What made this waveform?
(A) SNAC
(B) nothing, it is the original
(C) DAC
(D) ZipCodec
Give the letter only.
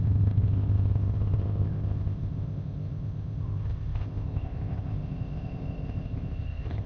D